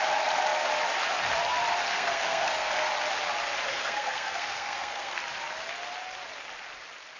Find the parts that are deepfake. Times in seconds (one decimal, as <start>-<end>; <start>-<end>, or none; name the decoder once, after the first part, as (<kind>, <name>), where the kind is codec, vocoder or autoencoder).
1.9-2.7 (codec, SNAC); 3.7-5.2